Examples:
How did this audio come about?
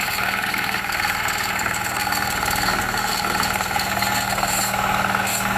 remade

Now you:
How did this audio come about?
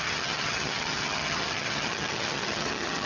remade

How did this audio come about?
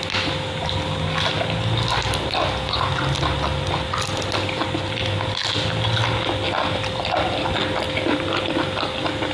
recorded